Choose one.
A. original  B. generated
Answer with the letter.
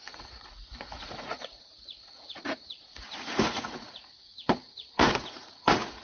B